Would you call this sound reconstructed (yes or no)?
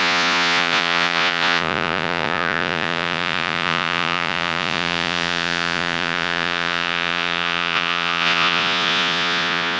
yes